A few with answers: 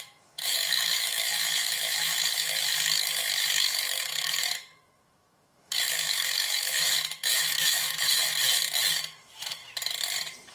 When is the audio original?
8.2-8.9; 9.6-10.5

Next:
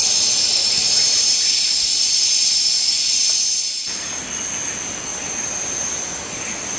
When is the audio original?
0.0-0.5; 1.4-5.1

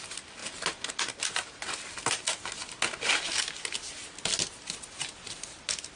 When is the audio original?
0.0-0.4; 2.0-6.0

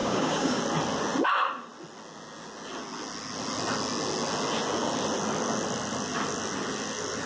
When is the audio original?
0.6-7.3

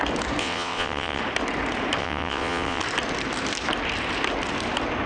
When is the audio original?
0.0-0.4; 1.2-2.0; 2.8-5.1

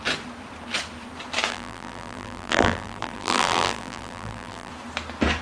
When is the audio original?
0.0-1.5; 4.7-5.4

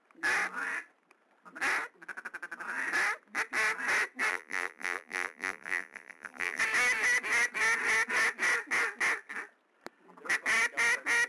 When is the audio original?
0.0-4.3; 6.6-11.3

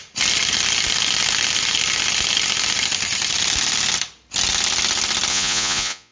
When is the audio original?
0.0-5.3